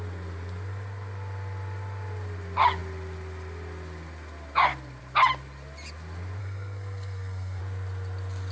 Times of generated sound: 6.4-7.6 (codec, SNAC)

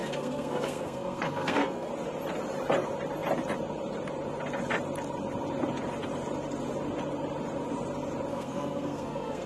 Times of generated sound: 0.0-1.9 (codec, SNAC); 8.3-9.5

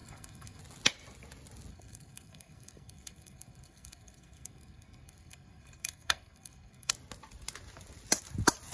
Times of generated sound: 0.0-0.6 (codec, SNAC); 1.7-6.9

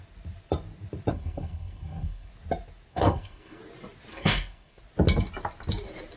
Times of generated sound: 1.1-2.3 (codec, SNAC); 2.9-3.6; 4.1-4.8

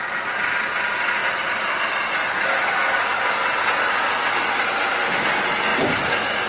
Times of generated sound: none

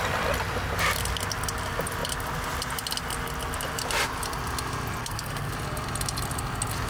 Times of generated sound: 5.0-5.5 (codec, SNAC)

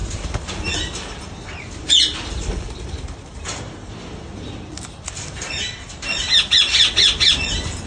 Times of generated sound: none

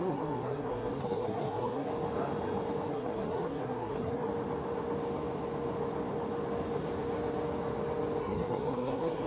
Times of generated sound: 0.0-1.9 (codec, SNAC); 2.9-4.3; 8.2-9.3